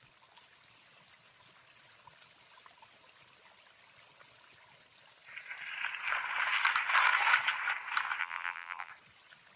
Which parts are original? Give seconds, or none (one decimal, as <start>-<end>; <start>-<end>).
0.0-8.2; 8.9-9.6